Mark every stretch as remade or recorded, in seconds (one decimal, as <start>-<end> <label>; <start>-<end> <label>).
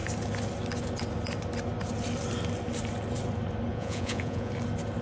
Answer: 0.0-3.7 recorded; 3.7-4.5 remade; 4.5-5.0 recorded